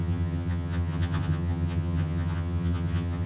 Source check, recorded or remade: remade